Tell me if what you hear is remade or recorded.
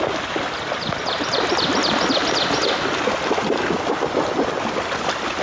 recorded